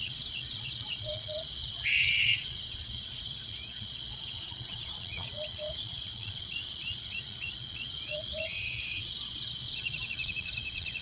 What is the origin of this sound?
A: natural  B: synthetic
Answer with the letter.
B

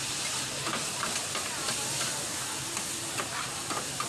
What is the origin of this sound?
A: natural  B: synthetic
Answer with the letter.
A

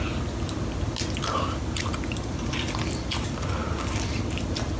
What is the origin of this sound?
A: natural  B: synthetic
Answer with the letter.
A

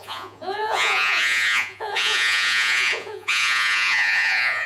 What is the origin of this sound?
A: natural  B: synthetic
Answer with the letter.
B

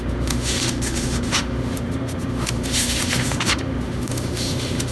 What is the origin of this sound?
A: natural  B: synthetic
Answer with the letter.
B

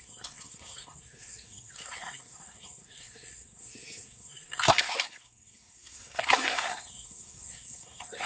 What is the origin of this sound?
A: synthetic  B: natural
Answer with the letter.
A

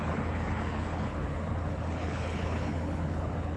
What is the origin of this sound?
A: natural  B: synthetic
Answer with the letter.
B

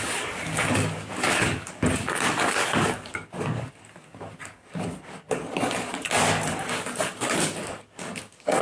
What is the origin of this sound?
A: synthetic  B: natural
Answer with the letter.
A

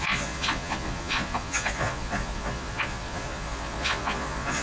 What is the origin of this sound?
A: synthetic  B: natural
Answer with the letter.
A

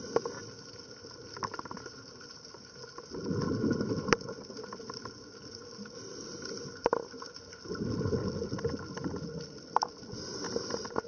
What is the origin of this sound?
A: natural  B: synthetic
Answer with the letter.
A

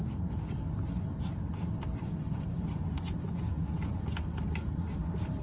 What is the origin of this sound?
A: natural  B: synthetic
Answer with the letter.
B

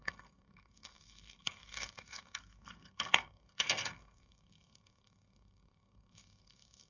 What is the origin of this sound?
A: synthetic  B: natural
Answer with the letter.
A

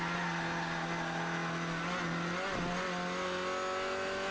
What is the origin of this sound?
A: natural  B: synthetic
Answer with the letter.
A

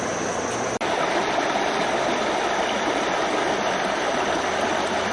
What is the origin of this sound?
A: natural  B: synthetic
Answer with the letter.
A